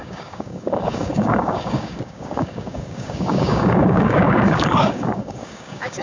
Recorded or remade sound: remade